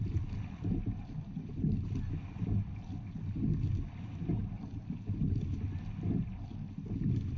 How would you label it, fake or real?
real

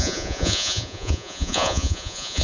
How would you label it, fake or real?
fake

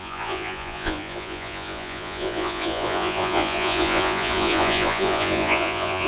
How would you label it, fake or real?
fake